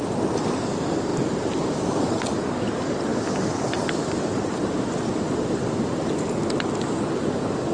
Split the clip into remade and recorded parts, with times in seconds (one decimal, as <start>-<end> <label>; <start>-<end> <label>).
0.0-1.1 recorded; 1.1-2.3 remade; 2.3-7.7 recorded